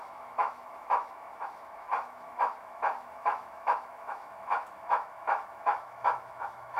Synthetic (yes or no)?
yes